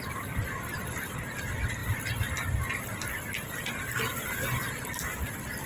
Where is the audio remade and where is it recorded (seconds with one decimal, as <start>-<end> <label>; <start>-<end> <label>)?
0.0-5.7 recorded